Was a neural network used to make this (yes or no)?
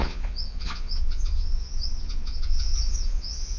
yes